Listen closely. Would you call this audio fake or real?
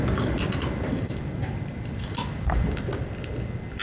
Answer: real